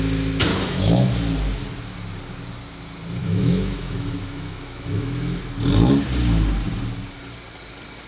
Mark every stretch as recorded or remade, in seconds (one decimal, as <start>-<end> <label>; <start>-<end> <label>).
0.0-0.5 recorded; 0.5-1.1 remade; 1.1-3.2 recorded; 3.2-5.4 remade; 5.4-8.1 recorded